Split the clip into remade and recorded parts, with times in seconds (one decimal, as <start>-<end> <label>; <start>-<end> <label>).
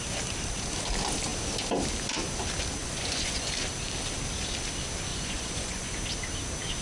0.0-2.8 recorded; 2.8-3.5 remade; 3.5-5.1 recorded; 5.1-5.9 remade; 5.9-6.8 recorded